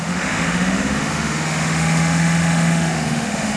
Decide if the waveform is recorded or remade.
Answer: remade